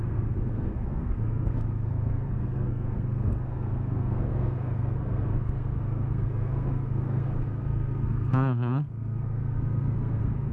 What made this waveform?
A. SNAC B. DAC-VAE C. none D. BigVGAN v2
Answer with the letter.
A